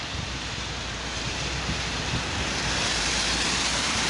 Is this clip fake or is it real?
fake